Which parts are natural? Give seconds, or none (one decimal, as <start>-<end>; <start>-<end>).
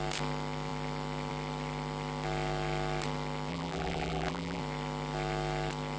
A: 0.0-3.5; 4.6-6.0